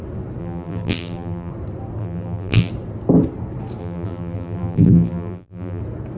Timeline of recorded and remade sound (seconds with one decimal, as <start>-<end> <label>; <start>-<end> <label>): 0.0-0.4 recorded; 0.4-1.5 remade; 1.5-2.0 recorded; 2.0-2.7 remade; 2.7-3.8 recorded; 3.8-5.8 remade; 5.8-6.2 recorded